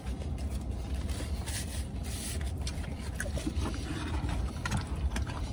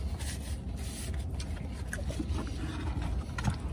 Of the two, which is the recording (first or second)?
second